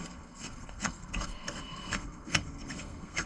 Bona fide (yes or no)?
no